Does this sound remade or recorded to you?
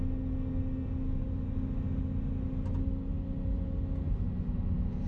recorded